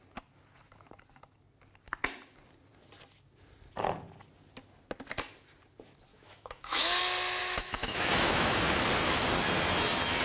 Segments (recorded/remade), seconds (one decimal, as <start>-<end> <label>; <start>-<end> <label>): 0.0-6.1 recorded; 6.1-7.0 remade; 7.0-7.4 recorded; 7.4-8.6 remade; 8.6-10.2 recorded